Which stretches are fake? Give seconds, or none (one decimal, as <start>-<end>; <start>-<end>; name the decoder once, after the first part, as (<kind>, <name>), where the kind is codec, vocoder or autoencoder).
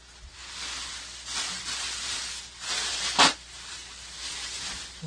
0.4-2.0 (vocoder, BigVGAN v2); 2.9-4.3